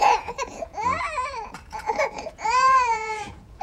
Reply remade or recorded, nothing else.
remade